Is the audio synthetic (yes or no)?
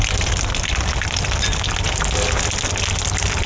no